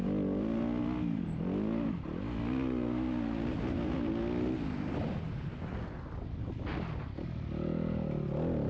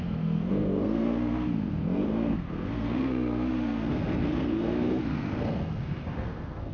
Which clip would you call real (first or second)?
first